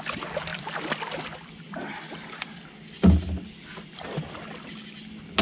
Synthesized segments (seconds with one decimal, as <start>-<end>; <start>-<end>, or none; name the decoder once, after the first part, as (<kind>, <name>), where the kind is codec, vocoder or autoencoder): 0.5-2.6 (vocoder, BigVGAN v2)